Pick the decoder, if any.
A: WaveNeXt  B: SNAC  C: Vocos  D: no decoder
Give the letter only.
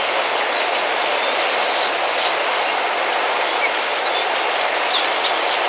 D